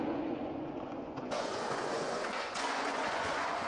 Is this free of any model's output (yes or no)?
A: no